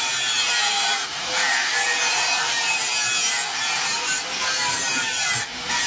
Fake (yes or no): no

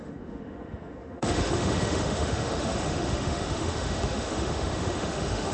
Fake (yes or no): yes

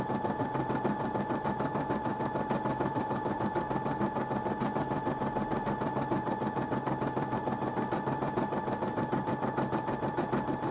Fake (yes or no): yes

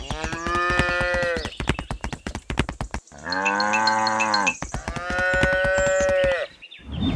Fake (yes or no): no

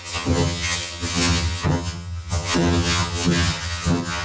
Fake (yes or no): yes